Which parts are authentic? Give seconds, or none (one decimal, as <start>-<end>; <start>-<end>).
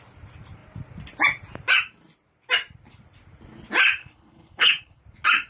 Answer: 0.0-4.0; 5.0-5.5